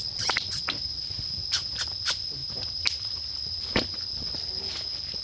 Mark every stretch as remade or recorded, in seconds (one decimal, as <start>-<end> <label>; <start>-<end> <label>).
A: 0.0-2.4 recorded; 2.4-3.2 remade; 3.2-5.2 recorded